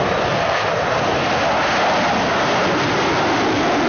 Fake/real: real